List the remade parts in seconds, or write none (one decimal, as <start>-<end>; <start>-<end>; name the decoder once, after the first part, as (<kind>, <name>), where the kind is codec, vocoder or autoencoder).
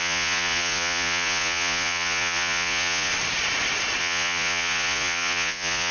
0.0-3.1 (vocoder, Vocos); 4.0-5.9